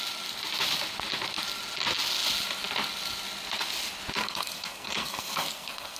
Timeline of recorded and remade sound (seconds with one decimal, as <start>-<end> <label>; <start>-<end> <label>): 0.0-4.2 recorded; 4.2-6.0 remade